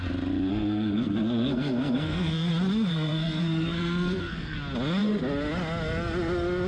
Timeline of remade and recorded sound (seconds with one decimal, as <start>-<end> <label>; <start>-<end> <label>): 0.0-0.5 recorded; 0.5-2.5 remade; 2.5-2.9 recorded; 2.9-4.6 remade; 4.6-6.7 recorded